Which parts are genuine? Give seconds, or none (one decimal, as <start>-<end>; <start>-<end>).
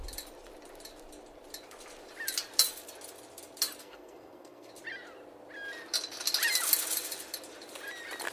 0.0-3.8; 4.7-8.3